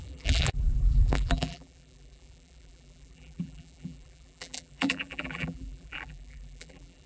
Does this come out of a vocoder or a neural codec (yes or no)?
yes